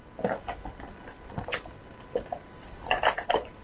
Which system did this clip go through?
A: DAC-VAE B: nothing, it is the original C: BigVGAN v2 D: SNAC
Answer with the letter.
B